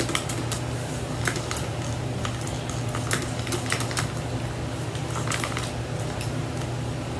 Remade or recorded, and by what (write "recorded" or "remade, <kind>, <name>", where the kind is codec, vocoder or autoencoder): recorded